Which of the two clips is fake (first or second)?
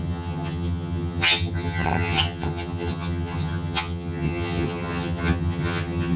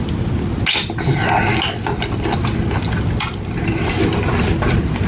first